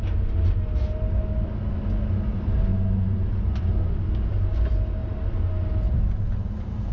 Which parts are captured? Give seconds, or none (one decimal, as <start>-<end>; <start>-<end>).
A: 0.0-6.9